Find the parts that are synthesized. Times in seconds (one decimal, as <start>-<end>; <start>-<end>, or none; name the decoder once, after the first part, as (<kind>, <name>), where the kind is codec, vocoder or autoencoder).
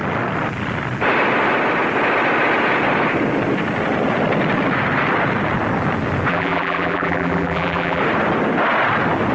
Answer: 6.3-8.0 (vocoder, BigVGAN v2)